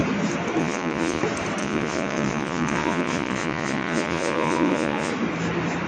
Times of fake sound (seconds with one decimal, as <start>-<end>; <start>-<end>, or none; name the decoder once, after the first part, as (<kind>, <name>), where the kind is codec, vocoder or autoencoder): 0.6-1.2 (vocoder, Vocos); 1.6-5.1